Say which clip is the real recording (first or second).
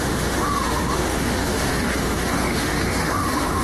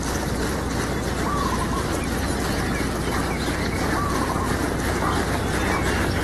second